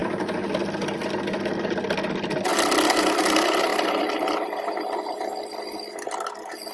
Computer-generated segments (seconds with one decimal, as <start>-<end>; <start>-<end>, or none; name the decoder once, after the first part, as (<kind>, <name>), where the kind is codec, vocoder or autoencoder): none